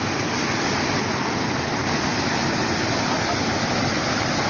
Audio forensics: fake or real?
real